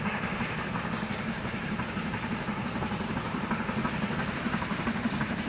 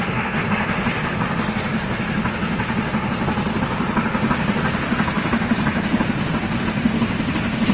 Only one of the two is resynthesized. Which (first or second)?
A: first